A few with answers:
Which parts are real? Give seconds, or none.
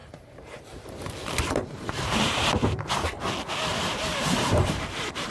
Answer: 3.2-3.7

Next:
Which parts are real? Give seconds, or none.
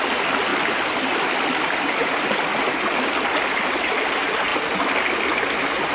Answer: 0.0-0.5; 4.0-5.9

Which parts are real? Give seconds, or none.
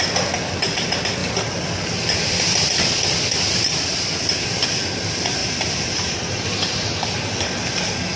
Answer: 0.0-5.4; 7.3-8.2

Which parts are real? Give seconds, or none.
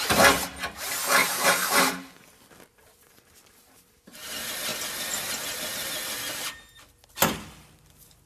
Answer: 0.0-1.2; 2.1-8.3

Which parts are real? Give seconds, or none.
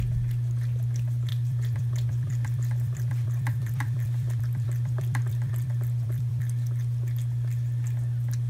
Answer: 0.0-1.3; 6.4-8.5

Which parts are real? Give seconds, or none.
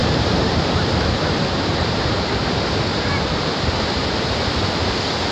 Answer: 2.1-2.9; 4.6-5.3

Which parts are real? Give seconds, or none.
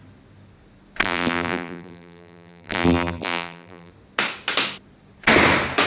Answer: 0.0-1.0; 3.9-5.9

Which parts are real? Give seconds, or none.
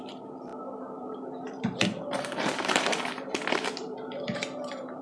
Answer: none